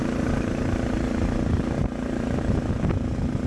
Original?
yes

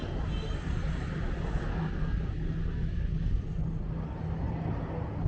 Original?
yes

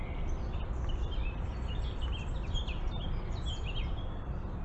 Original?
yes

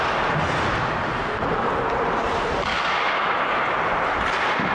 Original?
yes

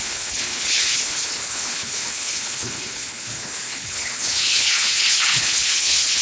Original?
no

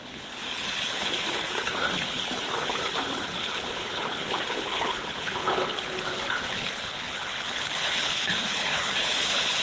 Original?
no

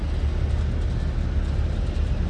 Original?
yes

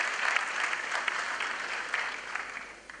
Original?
yes